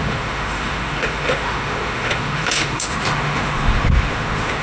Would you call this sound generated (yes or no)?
yes